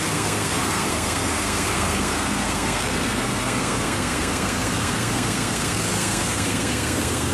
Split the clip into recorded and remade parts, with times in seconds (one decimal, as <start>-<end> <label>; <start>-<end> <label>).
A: 0.0-7.3 remade